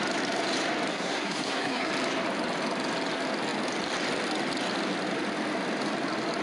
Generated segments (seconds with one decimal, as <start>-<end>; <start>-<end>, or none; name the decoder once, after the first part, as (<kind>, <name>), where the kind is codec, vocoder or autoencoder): 0.9-1.9 (codec, SNAC)